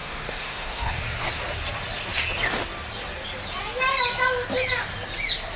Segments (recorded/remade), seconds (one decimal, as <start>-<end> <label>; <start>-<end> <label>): 0.0-1.0 remade; 1.0-5.6 recorded